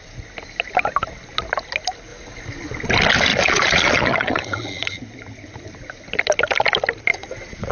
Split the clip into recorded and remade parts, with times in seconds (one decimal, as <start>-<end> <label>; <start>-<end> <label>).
0.0-3.3 recorded; 3.3-5.0 remade; 5.0-7.1 recorded; 7.1-7.7 remade